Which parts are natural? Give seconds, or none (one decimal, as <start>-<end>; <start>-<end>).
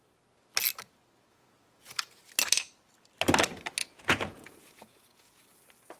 0.0-1.3; 2.2-3.8; 5.4-6.0